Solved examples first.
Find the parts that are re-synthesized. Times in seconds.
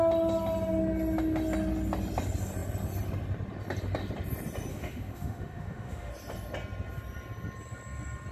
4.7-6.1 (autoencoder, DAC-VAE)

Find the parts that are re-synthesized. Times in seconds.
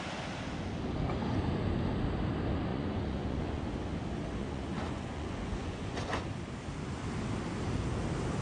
2.7-3.7 (vocoder, Vocos); 4.4-6.2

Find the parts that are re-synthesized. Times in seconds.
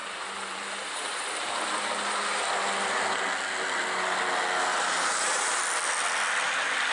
0.0-2.5 (vocoder, BigVGAN v2); 4.7-5.6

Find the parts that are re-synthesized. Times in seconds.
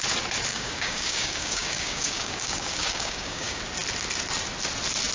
0.5-3.6 (codec, DAC)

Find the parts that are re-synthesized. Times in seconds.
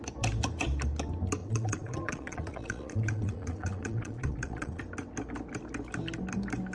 1.4-4.8 (vocoder, Vocos)